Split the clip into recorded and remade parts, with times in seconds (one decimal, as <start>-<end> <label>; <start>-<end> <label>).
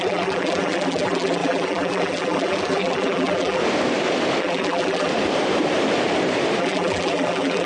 0.0-3.6 remade; 3.6-4.4 recorded; 4.4-5.1 remade; 5.1-6.6 recorded; 6.6-7.7 remade